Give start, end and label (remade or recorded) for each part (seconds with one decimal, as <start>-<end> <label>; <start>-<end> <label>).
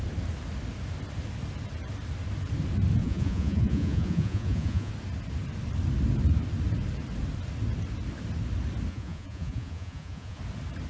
0.0-3.0 recorded; 3.0-4.9 remade; 4.9-8.9 recorded; 8.9-10.4 remade; 10.4-10.9 recorded